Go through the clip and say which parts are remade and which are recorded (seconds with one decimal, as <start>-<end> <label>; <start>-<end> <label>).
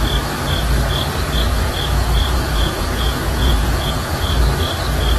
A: 0.0-1.5 recorded; 1.5-4.4 remade; 4.4-5.2 recorded